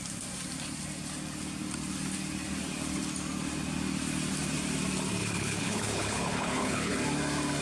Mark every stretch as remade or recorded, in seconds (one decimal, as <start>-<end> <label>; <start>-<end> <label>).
0.0-5.2 recorded; 5.2-6.9 remade; 6.9-7.6 recorded